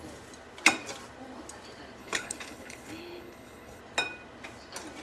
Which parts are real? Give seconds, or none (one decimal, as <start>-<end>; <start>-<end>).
0.0-2.0; 3.8-5.0